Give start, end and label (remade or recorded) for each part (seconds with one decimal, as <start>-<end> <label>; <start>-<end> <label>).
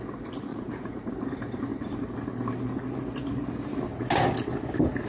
0.0-0.5 recorded; 0.5-1.1 remade; 1.1-5.1 recorded